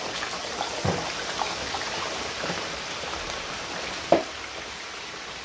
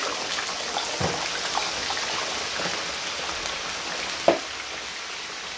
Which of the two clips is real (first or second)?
second